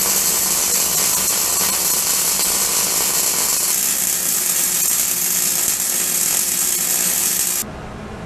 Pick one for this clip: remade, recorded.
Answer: recorded